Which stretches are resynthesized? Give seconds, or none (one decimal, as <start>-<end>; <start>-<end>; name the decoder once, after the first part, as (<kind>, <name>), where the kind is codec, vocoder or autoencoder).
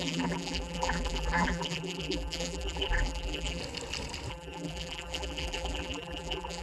0.0-3.6 (vocoder, BigVGAN v2); 4.3-6.6